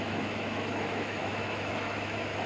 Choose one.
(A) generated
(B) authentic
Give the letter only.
A